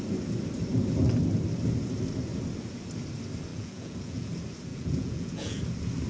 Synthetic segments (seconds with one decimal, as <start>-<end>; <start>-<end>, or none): 3.5-4.3; 4.7-5.6